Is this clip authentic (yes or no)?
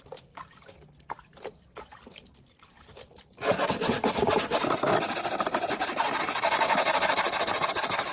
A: yes